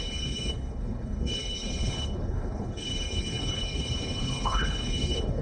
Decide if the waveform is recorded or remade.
remade